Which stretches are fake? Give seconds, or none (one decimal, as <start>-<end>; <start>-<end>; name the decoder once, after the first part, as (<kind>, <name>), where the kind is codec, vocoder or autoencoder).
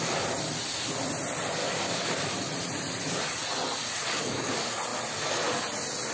1.6-2.2 (codec, DAC); 4.0-4.5